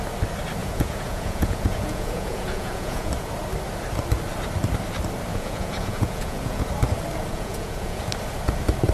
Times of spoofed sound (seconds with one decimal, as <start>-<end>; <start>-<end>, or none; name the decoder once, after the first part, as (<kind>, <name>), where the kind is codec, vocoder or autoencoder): 0.6-3.1 (vocoder, Vocos); 5.3-6.7; 7.3-8.0

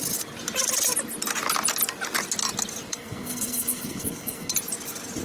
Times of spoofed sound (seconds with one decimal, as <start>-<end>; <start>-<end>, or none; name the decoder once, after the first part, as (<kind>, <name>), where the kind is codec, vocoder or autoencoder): 2.9-4.5 (codec, SNAC)

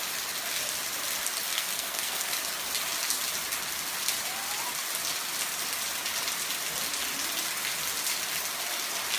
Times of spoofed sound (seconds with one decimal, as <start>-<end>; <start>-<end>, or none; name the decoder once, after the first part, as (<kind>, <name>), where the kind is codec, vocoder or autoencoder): 1.5-2.3 (codec, SNAC)

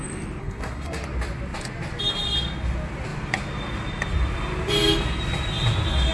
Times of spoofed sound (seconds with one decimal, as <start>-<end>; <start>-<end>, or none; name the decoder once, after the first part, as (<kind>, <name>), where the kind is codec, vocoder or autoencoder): 0.4-1.0 (codec, SNAC)

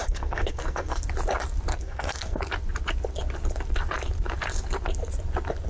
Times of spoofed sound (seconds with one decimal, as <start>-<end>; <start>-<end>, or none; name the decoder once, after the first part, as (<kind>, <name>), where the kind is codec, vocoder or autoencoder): 0.0-1.0 (codec, SNAC); 1.7-2.4

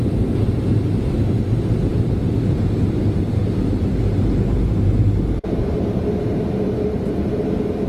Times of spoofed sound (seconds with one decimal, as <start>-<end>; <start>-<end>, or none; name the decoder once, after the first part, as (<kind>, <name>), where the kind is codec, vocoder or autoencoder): 1.9-6.0 (vocoder, BigVGAN v2)